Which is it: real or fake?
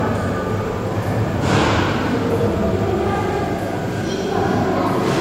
real